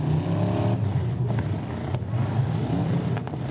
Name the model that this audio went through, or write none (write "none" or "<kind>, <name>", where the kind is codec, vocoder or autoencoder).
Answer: none